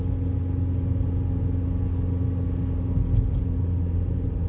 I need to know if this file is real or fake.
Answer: real